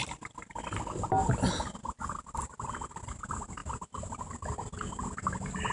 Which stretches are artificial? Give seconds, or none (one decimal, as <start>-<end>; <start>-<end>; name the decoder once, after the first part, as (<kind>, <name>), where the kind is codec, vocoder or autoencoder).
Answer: 3.6-4.3 (vocoder, BigVGAN v2)